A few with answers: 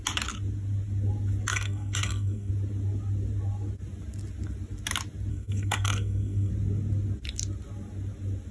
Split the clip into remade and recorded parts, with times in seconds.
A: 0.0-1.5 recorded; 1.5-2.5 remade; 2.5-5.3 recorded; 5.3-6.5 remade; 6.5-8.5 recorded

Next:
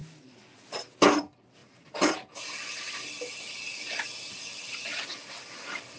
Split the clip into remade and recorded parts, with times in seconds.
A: 0.0-6.0 recorded

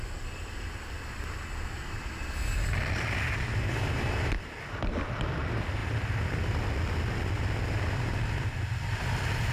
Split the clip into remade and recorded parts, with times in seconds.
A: 0.0-9.5 recorded

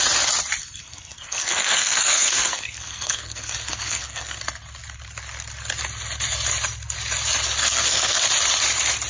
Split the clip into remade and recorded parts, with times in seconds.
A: 0.0-0.6 recorded; 0.6-4.4 remade; 4.4-7.6 recorded; 7.6-8.2 remade; 8.2-9.1 recorded

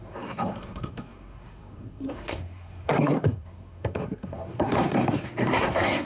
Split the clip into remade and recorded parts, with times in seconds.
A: 0.0-6.0 remade

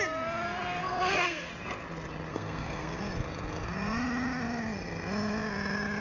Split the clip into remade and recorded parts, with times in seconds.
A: 0.0-0.8 recorded; 0.8-1.5 remade; 1.5-2.3 recorded; 2.3-3.0 remade; 3.0-6.0 recorded

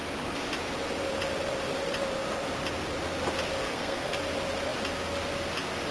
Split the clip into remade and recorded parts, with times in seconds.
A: 0.0-3.6 recorded; 3.6-4.2 remade; 4.2-5.9 recorded